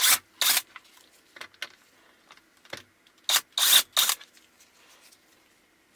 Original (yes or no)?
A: yes